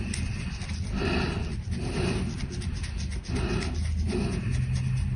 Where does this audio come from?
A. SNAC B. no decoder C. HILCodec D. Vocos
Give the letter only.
B